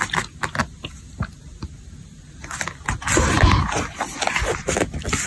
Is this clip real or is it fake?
real